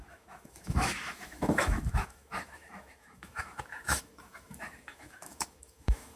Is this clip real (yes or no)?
no